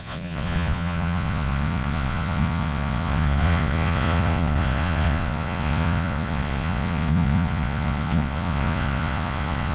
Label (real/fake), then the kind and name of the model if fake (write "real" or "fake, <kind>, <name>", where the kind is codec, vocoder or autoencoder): fake, vocoder, Vocos